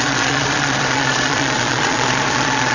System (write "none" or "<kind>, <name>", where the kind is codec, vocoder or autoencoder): vocoder, Vocos